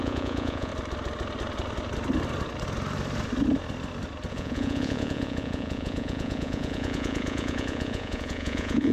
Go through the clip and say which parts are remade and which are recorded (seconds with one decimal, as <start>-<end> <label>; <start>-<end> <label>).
0.0-0.7 remade; 0.7-4.3 recorded; 4.3-8.9 remade